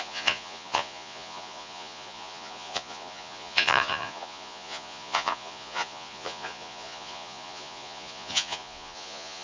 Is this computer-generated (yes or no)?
yes